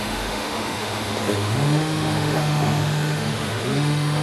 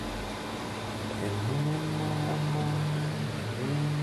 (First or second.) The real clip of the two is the second